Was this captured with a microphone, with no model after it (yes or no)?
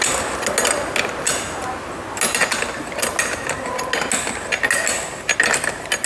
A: yes